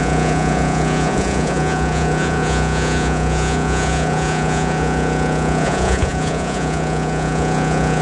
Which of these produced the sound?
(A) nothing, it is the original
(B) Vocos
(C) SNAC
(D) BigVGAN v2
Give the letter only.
B